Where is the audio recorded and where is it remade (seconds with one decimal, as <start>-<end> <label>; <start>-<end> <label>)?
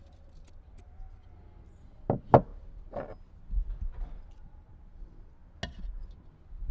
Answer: 0.0-6.7 recorded